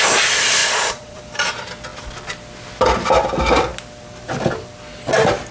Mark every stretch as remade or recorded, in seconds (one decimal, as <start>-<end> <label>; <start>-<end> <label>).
0.0-0.6 recorded; 0.6-1.2 remade; 1.2-5.5 recorded

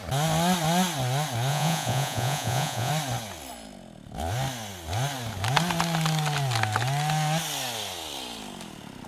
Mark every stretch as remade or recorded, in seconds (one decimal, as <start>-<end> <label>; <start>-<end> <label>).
0.0-1.5 recorded; 1.5-2.9 remade; 2.9-9.1 recorded

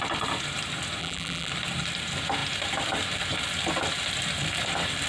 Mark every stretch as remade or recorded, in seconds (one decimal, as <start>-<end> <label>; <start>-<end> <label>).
0.0-1.0 recorded; 1.0-1.5 remade; 1.5-5.1 recorded

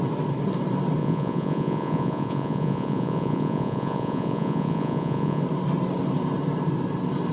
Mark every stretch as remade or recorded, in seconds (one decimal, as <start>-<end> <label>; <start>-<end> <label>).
0.0-1.0 recorded; 1.0-5.4 remade; 5.4-7.3 recorded